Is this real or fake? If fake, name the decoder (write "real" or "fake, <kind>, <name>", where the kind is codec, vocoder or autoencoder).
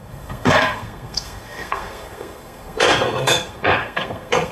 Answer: fake, codec, SNAC